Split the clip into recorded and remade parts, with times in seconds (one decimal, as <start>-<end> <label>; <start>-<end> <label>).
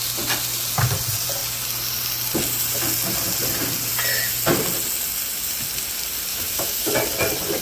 0.0-6.3 recorded; 6.3-6.9 remade; 6.9-7.6 recorded